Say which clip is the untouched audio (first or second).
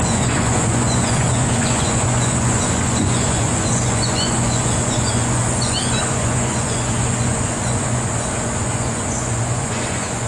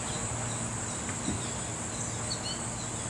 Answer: second